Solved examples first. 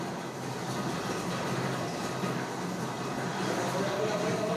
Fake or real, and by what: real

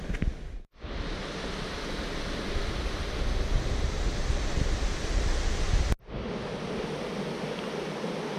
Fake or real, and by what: real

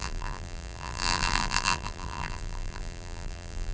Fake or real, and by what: fake, vocoder, BigVGAN v2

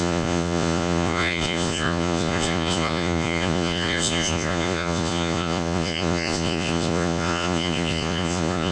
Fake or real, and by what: fake, vocoder, Vocos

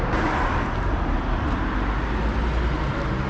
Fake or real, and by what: real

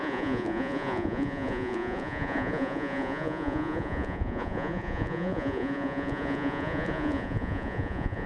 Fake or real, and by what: fake, vocoder, Vocos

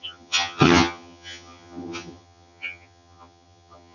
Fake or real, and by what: fake, vocoder, HiFi-GAN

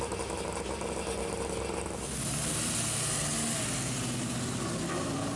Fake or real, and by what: real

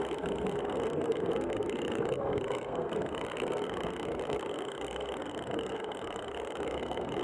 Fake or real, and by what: fake, codec, SNAC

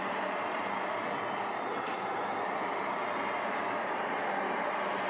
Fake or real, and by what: real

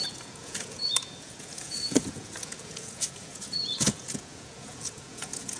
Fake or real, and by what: fake, vocoder, Vocos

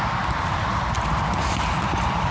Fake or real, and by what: real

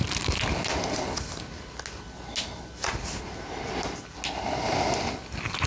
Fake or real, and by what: real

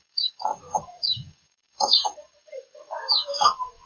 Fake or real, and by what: fake, codec, DAC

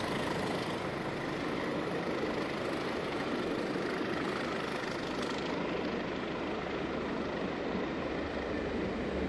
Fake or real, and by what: real